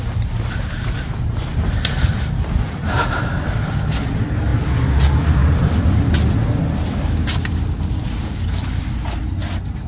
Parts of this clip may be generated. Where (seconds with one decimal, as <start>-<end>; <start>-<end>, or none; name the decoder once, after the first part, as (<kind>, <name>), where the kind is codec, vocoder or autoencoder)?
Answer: none